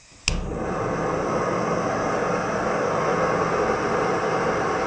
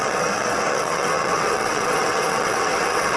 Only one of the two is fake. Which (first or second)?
second